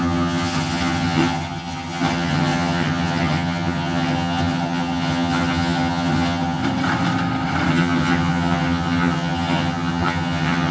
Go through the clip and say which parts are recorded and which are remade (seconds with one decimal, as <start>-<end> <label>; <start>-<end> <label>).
0.0-6.6 remade; 6.6-7.7 recorded; 7.7-10.7 remade